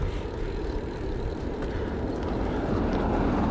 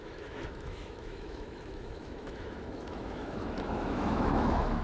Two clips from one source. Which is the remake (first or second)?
second